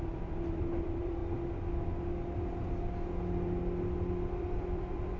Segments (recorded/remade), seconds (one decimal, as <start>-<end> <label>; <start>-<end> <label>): 0.0-1.2 remade; 1.2-4.3 recorded; 4.3-5.2 remade